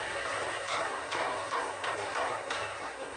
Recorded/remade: remade